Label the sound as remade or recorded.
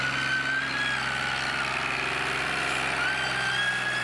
recorded